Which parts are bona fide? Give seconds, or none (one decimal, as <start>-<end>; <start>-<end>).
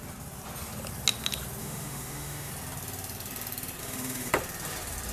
0.0-1.6; 2.5-3.8; 4.3-5.1